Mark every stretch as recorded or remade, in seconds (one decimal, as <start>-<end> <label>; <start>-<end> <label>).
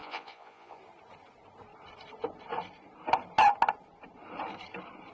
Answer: 0.0-0.8 remade; 0.8-5.1 recorded